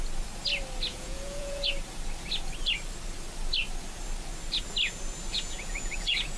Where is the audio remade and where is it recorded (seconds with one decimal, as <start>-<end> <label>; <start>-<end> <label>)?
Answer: 0.0-0.9 recorded; 0.9-1.7 remade; 1.7-5.3 recorded; 5.3-6.4 remade